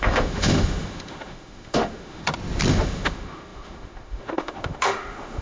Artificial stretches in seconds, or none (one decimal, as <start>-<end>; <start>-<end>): 0.0-2.2; 2.7-5.4